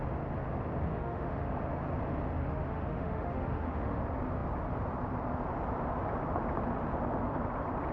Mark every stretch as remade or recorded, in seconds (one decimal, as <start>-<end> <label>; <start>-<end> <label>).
0.0-0.9 recorded; 0.9-1.5 remade; 1.5-2.4 recorded; 2.4-4.0 remade; 4.0-7.9 recorded